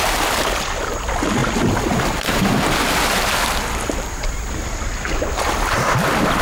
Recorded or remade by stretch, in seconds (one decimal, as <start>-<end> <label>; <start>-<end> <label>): 0.0-6.4 recorded